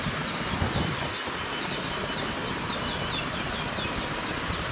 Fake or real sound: real